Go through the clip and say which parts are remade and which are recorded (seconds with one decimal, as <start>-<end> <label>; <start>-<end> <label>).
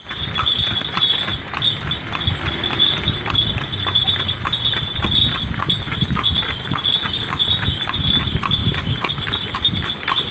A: 0.0-10.3 recorded